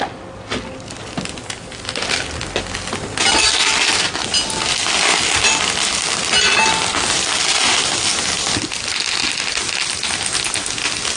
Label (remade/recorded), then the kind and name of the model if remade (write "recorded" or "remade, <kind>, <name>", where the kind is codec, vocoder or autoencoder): recorded